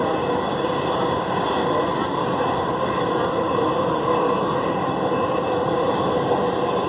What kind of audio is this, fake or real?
real